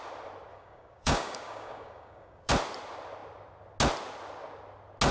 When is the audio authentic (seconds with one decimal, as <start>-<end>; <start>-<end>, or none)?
0.0-0.5; 2.5-5.1